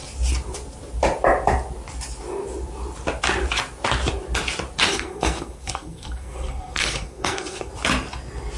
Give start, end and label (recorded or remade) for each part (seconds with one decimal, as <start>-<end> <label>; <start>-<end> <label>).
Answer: 0.0-4.9 recorded; 4.9-7.7 remade; 7.7-8.6 recorded